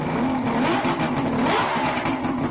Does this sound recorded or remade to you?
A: recorded